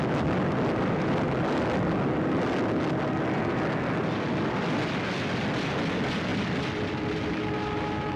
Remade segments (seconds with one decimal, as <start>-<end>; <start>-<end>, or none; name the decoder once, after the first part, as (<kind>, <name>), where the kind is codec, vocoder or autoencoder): none